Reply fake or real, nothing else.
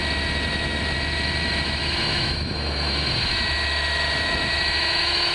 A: fake